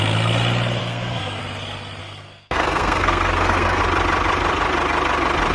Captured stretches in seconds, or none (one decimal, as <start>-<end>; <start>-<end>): 0.0-0.8; 1.4-2.0; 3.8-5.5